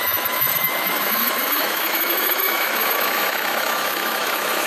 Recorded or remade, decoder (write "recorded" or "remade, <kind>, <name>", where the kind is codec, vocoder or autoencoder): remade, autoencoder, DAC-VAE